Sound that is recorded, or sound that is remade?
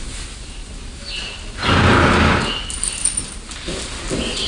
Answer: recorded